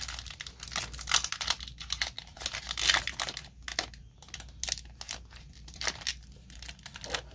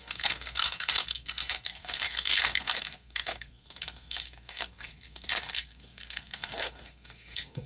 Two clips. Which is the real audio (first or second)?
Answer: first